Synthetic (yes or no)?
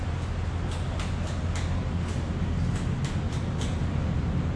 no